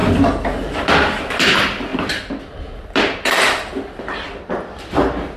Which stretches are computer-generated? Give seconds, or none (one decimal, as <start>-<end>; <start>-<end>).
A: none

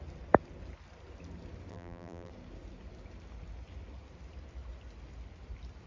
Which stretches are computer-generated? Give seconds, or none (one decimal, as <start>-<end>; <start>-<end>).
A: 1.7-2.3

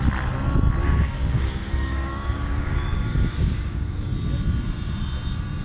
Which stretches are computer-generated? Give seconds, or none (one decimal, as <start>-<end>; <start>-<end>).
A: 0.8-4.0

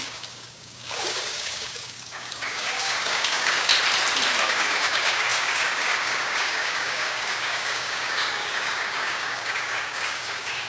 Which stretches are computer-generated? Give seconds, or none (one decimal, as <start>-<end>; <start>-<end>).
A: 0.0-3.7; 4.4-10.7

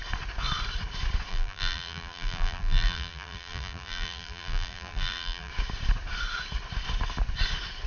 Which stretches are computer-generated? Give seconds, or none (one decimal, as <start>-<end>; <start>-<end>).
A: 1.3-5.5